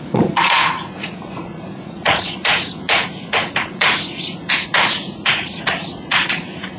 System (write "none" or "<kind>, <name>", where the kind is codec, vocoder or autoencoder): vocoder, Vocos